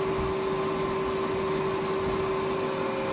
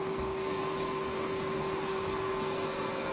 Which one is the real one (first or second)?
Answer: first